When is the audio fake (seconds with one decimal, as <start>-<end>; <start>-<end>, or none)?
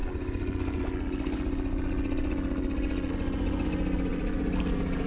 none